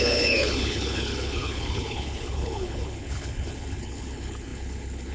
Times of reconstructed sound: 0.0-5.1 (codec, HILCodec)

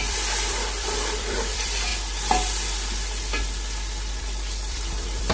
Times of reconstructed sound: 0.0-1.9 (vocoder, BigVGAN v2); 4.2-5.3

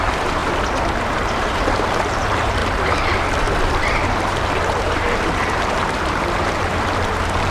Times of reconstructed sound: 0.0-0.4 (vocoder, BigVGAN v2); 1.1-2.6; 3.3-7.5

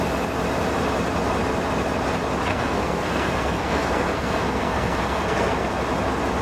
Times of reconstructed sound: 2.5-5.7 (codec, SNAC)

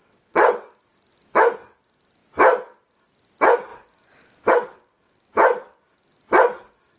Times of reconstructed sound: 0.0-0.7 (vocoder, WaveNeXt)

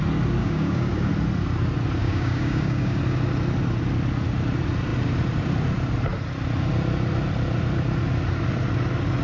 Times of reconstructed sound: 0.4-1.1 (codec, DAC); 2.0-3.0